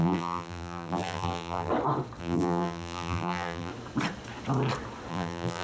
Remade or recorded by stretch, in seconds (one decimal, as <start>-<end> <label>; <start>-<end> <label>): 0.0-1.7 remade; 1.7-2.2 recorded; 2.2-3.7 remade; 3.7-5.1 recorded; 5.1-5.6 remade